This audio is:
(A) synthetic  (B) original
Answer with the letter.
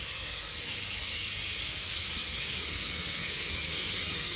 A